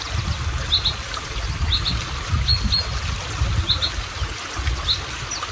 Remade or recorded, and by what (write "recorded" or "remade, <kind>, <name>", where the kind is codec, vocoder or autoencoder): recorded